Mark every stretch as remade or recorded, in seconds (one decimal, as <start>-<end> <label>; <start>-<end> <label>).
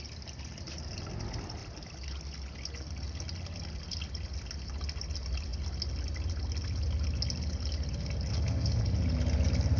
0.0-8.3 recorded; 8.3-8.8 remade; 8.8-9.8 recorded